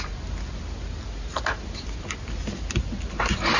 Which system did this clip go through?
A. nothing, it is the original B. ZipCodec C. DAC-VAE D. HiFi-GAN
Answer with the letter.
A